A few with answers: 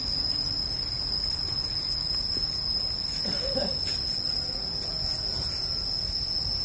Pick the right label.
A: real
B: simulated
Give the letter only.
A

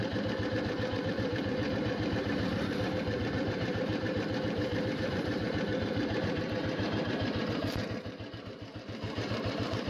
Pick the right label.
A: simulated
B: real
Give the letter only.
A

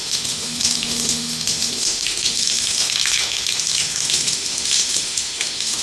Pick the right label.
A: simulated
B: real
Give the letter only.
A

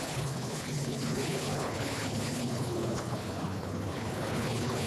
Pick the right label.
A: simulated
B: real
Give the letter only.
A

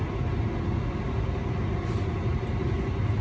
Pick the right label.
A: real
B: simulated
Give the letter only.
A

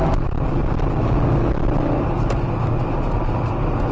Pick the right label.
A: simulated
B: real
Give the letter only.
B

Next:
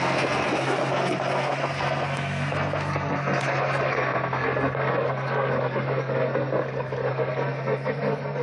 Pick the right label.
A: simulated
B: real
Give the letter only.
A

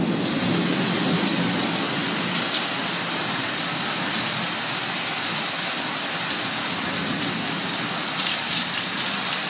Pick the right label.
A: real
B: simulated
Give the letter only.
A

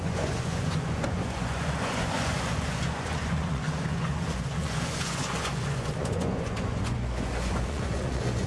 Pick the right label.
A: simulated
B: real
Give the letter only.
A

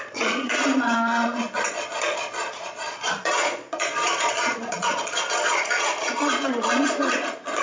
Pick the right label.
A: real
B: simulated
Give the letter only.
B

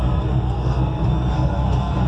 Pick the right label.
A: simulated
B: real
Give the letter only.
A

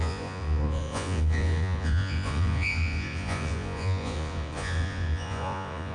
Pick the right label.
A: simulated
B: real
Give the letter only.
A